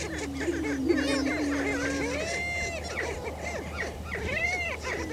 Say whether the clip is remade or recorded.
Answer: recorded